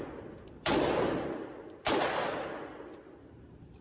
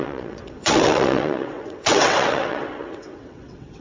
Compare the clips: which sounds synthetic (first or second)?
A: second